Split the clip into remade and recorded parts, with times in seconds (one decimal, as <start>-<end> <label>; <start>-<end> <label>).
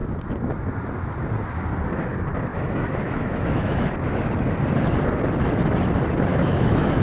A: 0.0-2.5 recorded; 2.5-3.9 remade; 3.9-6.3 recorded; 6.3-7.0 remade